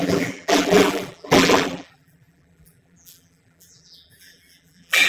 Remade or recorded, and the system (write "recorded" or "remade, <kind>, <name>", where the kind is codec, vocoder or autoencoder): remade, vocoder, BigVGAN v2